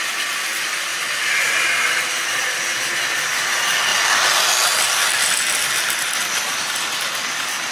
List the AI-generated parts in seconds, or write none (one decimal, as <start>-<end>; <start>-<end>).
none